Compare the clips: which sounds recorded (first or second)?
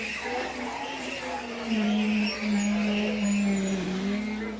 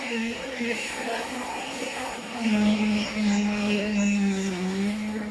first